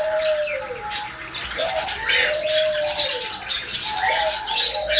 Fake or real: real